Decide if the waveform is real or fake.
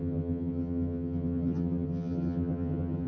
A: fake